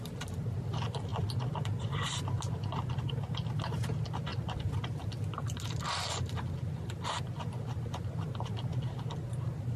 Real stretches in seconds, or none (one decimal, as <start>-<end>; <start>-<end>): 0.0-9.8

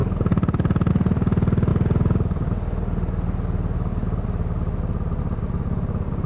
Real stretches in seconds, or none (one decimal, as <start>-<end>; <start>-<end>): 0.0-6.3

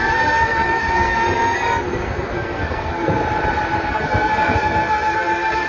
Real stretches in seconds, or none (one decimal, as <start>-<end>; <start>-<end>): 3.2-3.9

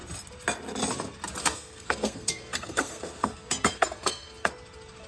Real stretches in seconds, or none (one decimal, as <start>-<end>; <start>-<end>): 0.0-1.4; 4.5-5.1